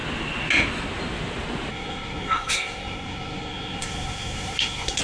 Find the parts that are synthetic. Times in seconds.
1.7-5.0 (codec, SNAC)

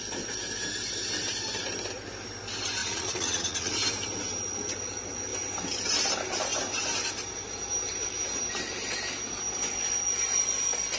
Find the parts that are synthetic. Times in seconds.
2.8-3.7 (vocoder, Vocos)